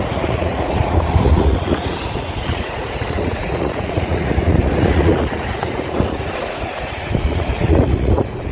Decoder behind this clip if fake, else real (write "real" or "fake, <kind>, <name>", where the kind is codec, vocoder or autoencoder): fake, vocoder, Vocos